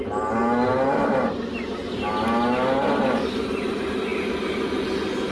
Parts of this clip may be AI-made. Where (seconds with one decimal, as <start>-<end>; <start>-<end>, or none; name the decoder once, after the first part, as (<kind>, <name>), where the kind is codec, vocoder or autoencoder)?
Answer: none